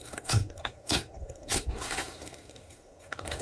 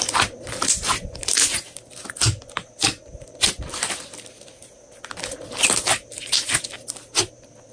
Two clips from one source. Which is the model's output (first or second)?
first